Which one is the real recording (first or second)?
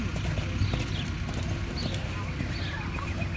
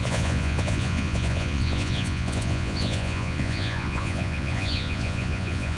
first